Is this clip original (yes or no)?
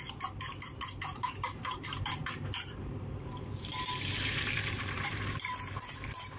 no